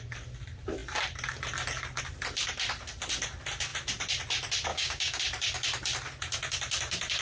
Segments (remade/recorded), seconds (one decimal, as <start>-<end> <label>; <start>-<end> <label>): 0.0-4.7 recorded; 4.7-5.2 remade; 5.2-7.2 recorded